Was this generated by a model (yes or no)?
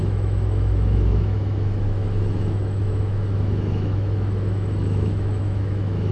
yes